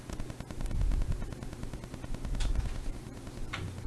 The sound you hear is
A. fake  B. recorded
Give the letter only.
B